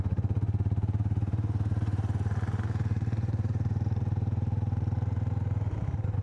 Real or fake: fake